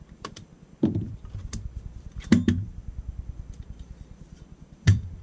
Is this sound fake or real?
fake